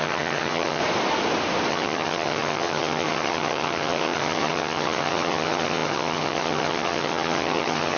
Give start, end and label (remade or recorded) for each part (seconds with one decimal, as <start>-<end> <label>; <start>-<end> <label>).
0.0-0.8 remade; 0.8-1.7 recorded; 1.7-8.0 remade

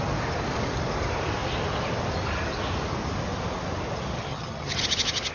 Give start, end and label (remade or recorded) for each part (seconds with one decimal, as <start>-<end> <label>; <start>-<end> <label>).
0.0-4.3 recorded; 4.3-4.8 remade; 4.8-5.3 recorded

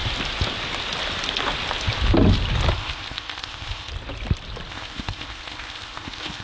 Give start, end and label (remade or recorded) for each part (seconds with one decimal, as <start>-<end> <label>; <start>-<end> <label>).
0.0-2.7 recorded; 2.7-3.9 remade; 3.9-4.7 recorded; 4.7-6.4 remade

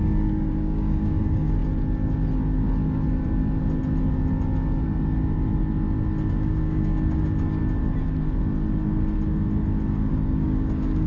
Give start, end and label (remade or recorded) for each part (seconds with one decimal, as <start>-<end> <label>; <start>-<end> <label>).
0.0-1.6 remade; 1.6-6.3 recorded; 6.3-7.6 remade; 7.6-10.1 recorded; 10.1-11.1 remade

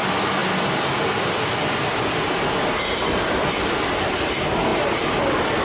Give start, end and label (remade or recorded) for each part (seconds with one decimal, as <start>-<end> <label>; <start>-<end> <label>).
0.0-5.6 recorded

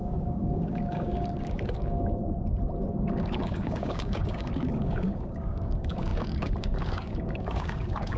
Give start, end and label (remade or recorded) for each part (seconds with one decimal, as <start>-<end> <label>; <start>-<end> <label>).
0.0-2.2 remade; 2.2-3.0 recorded; 3.0-8.2 remade

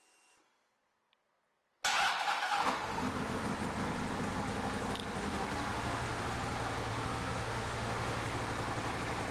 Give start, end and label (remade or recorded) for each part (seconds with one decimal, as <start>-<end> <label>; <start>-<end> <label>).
0.0-2.1 recorded; 2.1-3.4 remade; 3.4-5.2 recorded; 5.2-6.2 remade; 6.2-6.9 recorded; 6.9-8.4 remade; 8.4-9.3 recorded

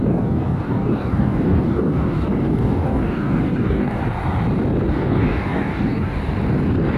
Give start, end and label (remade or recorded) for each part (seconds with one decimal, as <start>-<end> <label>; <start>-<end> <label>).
0.0-4.0 remade; 4.0-4.9 recorded; 4.9-6.2 remade; 6.2-7.0 recorded